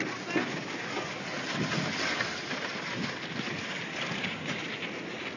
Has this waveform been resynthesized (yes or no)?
no